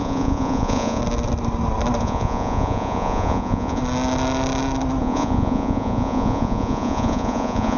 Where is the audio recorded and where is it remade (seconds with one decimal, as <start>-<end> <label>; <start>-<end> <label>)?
0.0-1.0 remade; 1.0-2.0 recorded; 2.0-3.8 remade; 3.8-5.0 recorded; 5.0-7.8 remade